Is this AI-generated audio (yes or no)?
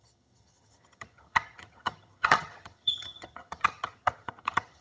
yes